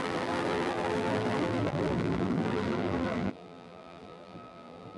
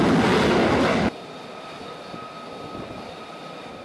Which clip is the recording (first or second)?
second